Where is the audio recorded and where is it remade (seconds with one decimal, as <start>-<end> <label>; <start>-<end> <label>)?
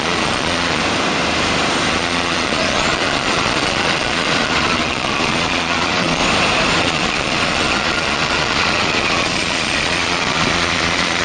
0.0-0.8 remade; 0.8-1.9 recorded; 1.9-6.2 remade; 6.2-6.8 recorded; 6.8-11.2 remade